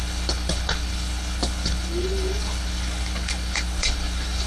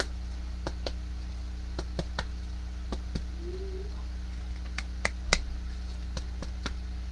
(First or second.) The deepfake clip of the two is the first